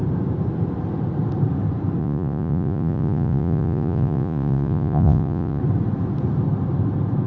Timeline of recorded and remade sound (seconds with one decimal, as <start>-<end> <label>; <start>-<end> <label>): 0.0-2.0 recorded; 2.0-5.6 remade; 5.6-7.3 recorded